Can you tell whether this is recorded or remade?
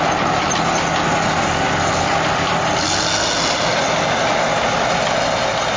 recorded